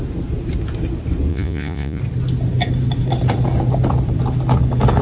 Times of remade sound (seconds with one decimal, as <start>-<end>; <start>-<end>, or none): 1.3-2.0